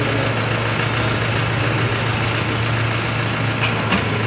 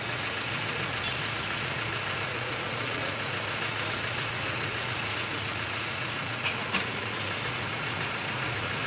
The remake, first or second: second